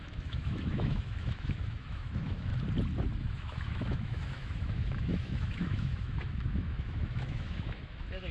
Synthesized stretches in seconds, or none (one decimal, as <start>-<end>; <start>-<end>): 0.0-2.5; 3.2-8.3